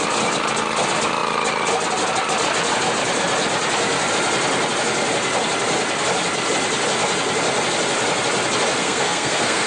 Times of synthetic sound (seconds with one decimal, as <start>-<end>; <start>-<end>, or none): 8.8-9.7